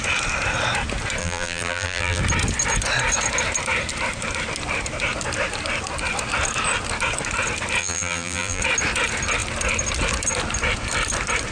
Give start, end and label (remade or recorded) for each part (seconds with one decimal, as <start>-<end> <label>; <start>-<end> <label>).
0.0-1.2 recorded; 1.2-2.2 remade; 2.2-7.8 recorded; 7.8-8.6 remade; 8.6-11.5 recorded